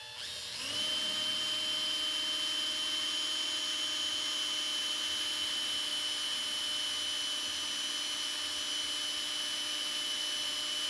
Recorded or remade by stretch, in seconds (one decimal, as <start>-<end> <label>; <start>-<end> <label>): 0.0-10.9 recorded